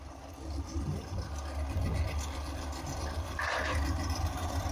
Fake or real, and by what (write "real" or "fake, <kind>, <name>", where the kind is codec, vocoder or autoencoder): real